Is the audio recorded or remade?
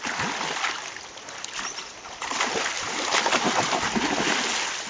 recorded